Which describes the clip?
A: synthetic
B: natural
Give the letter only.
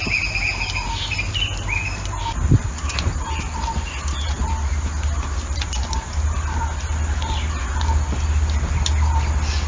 B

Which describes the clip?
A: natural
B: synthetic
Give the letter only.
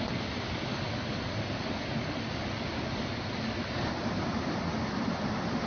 A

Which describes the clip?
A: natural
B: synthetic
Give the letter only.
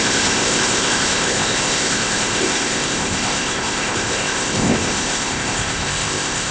B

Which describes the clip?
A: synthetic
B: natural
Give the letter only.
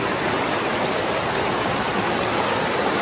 B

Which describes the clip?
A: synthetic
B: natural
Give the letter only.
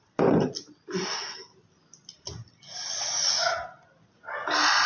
B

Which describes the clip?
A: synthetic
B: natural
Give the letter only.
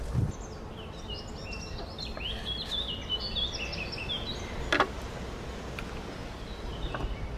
B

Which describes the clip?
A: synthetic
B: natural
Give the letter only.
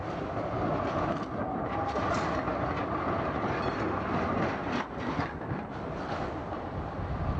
B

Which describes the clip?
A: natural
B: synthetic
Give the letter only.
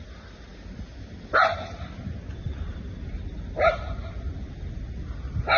A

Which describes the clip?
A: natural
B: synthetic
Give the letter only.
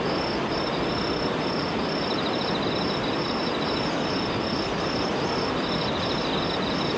A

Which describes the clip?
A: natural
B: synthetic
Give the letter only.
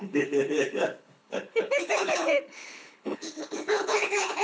B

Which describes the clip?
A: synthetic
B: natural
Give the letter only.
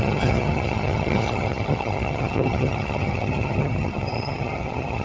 A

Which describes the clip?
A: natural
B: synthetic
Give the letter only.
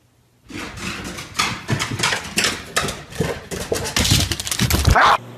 A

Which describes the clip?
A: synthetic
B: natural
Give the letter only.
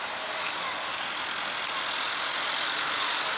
B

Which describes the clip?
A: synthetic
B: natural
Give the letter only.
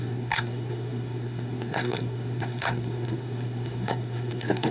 A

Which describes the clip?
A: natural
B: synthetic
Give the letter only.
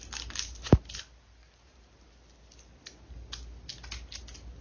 A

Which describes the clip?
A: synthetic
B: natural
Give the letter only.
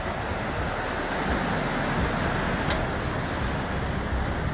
B